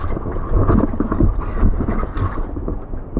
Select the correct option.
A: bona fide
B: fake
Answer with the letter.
A